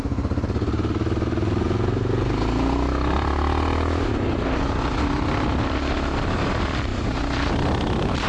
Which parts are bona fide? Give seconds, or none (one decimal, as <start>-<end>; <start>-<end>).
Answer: 0.0-8.3